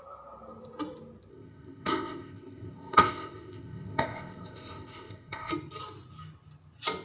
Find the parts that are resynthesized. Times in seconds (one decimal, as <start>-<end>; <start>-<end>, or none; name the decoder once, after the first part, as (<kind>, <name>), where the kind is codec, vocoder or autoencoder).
1.3-5.5 (codec, ZipCodec)